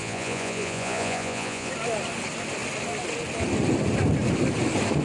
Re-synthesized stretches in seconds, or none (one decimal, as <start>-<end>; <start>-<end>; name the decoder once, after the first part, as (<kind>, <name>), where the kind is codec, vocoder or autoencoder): 0.0-1.7 (vocoder, Vocos)